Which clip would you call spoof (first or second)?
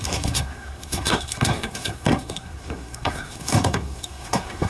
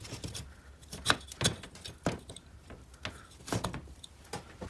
first